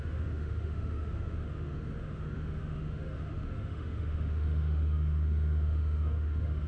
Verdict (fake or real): fake